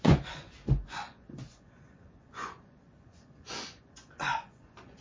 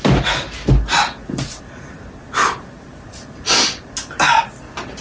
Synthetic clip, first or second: first